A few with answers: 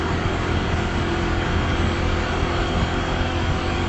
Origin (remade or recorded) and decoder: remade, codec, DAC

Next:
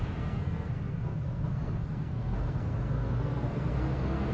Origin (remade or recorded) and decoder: remade, codec, SNAC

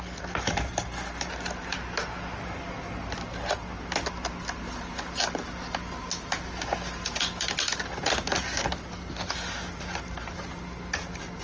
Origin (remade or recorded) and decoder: recorded